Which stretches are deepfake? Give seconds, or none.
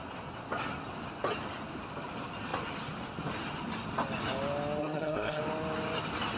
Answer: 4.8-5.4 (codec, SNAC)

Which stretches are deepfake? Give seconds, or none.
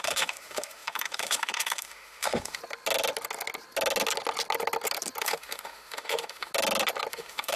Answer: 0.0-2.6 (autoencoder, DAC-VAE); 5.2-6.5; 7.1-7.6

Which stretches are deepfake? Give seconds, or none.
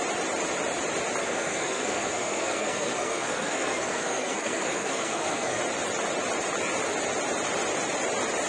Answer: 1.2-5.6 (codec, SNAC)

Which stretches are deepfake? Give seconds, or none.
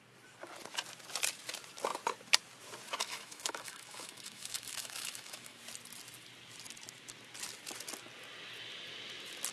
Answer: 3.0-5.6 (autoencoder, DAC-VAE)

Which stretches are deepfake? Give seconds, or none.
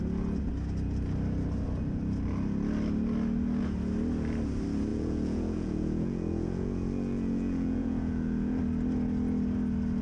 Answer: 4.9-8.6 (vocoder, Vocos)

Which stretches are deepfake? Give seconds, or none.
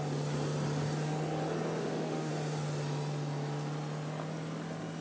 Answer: 1.8-2.3 (autoencoder, DAC-VAE)